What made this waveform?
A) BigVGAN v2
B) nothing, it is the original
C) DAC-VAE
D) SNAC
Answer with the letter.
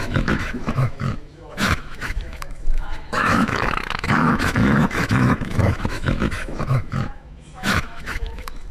C